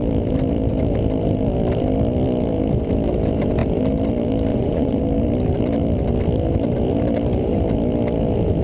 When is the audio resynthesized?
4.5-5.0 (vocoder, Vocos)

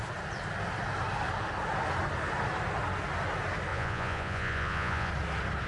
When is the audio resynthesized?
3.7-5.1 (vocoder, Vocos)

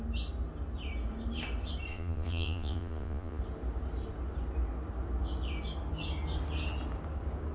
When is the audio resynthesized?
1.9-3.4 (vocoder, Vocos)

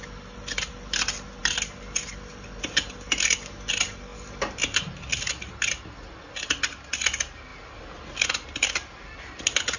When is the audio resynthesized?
none

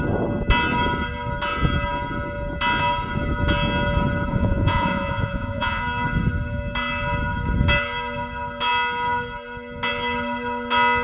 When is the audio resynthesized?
4.3-5.8 (vocoder, Vocos)

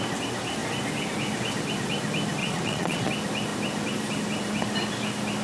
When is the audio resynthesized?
2.4-3.1 (vocoder, Vocos)

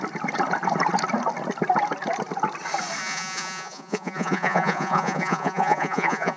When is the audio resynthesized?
3.0-6.4 (vocoder, Vocos)

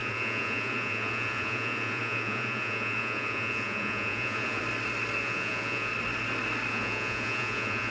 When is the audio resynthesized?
0.0-4.6 (vocoder, Vocos); 5.2-5.9; 6.7-7.9